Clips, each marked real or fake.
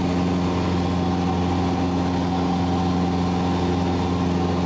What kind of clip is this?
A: real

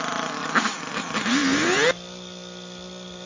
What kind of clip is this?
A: real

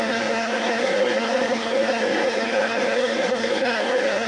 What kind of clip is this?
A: fake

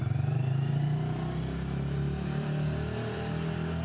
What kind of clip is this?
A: real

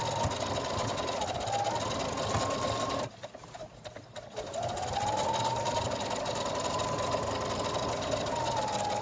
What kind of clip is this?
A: real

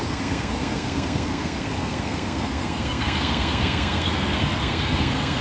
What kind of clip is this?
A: fake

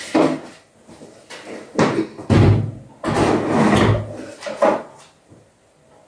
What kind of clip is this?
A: real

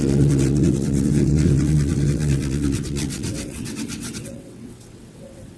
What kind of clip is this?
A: fake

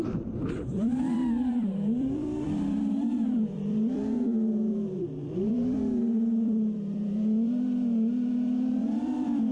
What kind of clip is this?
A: fake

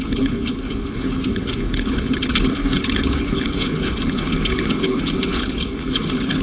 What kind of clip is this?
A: fake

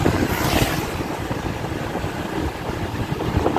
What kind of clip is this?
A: real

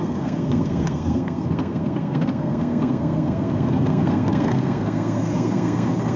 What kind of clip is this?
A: fake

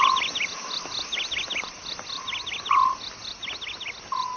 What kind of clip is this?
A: real